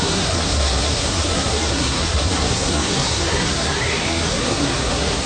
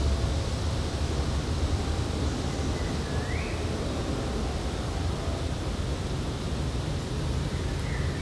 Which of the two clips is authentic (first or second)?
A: second